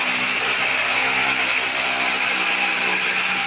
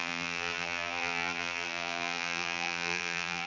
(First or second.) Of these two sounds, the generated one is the second